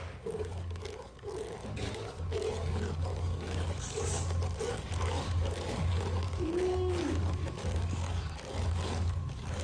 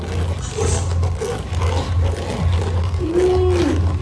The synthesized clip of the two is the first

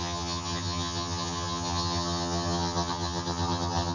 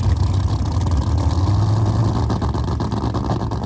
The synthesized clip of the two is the first